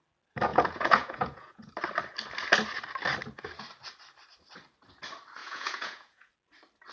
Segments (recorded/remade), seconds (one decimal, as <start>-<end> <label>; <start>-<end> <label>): 0.0-0.5 recorded; 0.5-1.7 remade; 1.7-5.4 recorded; 5.4-6.3 remade; 6.3-6.9 recorded